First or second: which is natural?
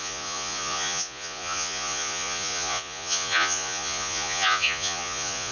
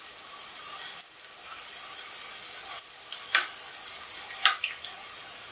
second